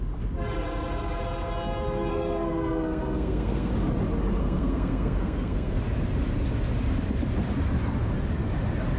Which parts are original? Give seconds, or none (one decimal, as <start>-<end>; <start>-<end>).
0.0-2.1; 3.7-4.4; 5.8-9.0